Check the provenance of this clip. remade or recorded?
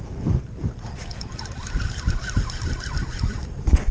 recorded